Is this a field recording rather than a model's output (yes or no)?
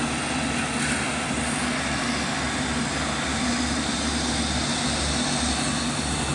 yes